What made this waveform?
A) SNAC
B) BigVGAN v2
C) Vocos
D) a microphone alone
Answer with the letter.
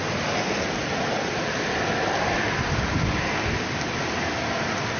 D